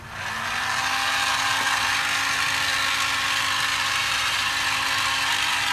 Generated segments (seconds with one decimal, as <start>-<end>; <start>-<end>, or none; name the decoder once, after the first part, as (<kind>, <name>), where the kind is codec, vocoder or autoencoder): 3.7-4.5 (vocoder, BigVGAN v2)